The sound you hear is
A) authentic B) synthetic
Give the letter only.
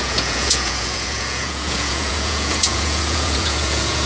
B